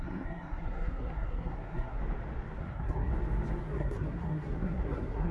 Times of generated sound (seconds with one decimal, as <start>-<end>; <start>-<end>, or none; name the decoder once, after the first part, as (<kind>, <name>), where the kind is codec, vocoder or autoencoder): 0.0-2.0 (codec, SNAC); 2.6-3.1; 3.6-5.3